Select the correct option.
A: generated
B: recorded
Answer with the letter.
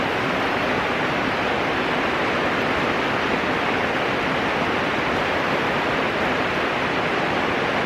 B